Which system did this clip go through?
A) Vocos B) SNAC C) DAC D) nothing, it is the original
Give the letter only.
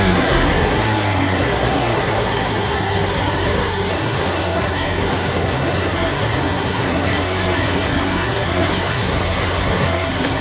B